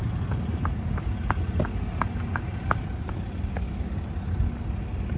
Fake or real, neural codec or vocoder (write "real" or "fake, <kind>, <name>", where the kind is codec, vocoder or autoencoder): real